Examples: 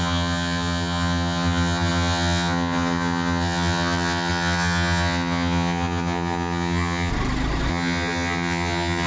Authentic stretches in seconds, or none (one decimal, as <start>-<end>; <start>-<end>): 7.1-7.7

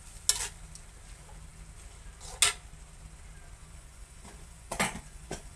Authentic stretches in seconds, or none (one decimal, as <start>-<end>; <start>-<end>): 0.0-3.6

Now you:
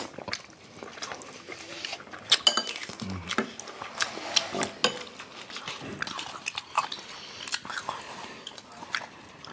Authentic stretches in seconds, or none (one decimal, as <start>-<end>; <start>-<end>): 0.0-9.5

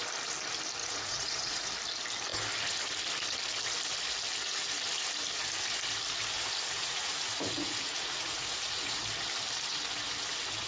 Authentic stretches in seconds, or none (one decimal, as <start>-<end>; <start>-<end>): 0.0-0.8; 1.7-6.8; 9.0-10.7

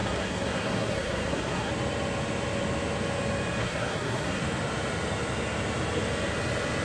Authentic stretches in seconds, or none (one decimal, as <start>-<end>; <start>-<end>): 1.7-3.6; 4.4-6.8

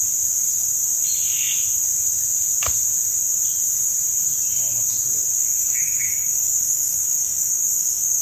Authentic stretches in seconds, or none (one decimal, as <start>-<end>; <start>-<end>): 0.0-5.4

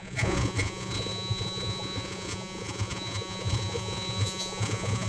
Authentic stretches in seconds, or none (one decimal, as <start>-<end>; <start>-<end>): none